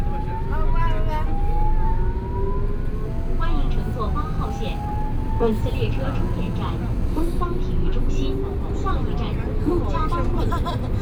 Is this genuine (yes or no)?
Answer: yes